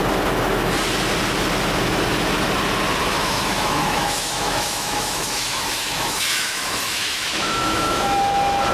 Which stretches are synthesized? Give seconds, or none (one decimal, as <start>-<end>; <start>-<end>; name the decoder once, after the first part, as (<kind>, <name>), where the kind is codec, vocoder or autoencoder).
3.0-8.2 (autoencoder, DAC-VAE)

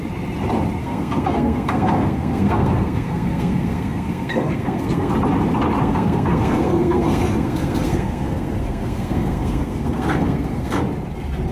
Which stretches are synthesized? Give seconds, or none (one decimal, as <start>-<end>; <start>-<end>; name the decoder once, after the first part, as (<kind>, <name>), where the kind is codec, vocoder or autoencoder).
0.8-5.1 (codec, SNAC); 5.8-10.8